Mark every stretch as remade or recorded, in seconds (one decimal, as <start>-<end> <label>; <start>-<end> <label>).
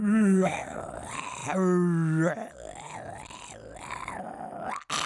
0.0-0.8 remade; 0.8-5.1 recorded